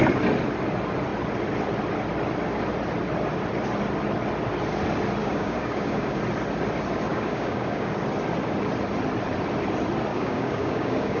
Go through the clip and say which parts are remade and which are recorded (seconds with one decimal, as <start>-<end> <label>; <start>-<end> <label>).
0.0-5.2 recorded; 5.2-6.2 remade; 6.2-7.1 recorded; 7.1-7.9 remade; 7.9-10.1 recorded; 10.1-11.2 remade